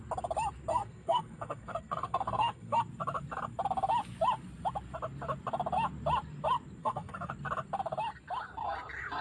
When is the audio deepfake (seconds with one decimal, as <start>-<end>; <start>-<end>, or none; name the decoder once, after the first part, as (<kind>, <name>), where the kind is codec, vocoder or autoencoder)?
0.7-2.8 (codec, SNAC); 6.8-7.3